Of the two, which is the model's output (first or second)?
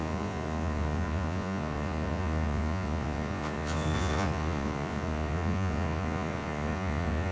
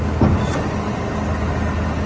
first